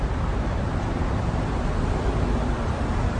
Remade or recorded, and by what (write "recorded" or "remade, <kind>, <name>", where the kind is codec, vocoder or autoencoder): recorded